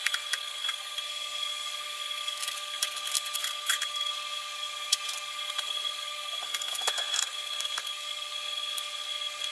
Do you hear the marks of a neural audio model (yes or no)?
yes